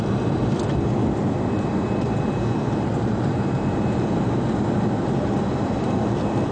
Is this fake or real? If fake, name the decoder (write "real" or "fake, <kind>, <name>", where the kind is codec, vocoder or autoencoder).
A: real